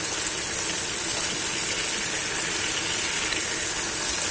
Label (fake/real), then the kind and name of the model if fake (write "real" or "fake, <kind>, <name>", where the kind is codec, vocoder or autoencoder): real